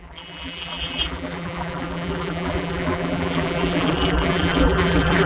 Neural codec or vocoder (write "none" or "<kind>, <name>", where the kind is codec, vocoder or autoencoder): vocoder, BigVGAN v2